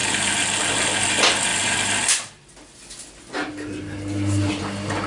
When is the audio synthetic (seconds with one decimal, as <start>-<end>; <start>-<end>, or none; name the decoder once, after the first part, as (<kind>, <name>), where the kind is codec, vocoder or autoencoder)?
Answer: none